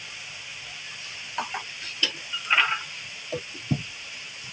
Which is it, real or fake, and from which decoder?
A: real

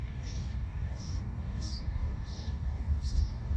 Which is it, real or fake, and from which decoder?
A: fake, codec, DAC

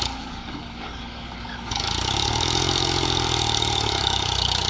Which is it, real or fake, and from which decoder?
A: fake, codec, DAC